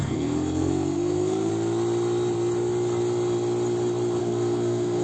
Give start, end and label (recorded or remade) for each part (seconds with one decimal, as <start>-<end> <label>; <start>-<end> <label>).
0.0-1.5 remade; 1.5-4.2 recorded; 4.2-5.0 remade